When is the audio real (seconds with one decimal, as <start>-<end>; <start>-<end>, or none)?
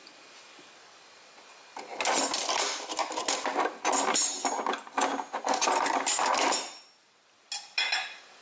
0.0-8.4